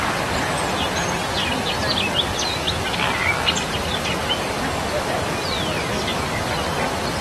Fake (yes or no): no